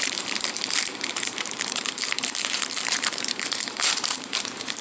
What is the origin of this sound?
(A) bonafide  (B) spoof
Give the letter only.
B